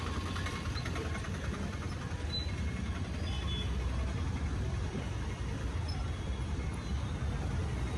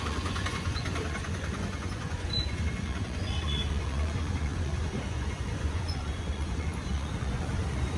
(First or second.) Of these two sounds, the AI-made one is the second